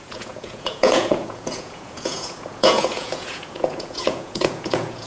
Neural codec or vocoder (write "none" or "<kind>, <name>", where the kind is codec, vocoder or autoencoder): vocoder, Vocos